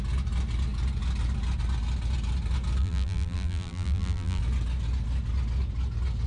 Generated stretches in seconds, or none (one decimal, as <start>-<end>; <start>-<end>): 2.8-4.4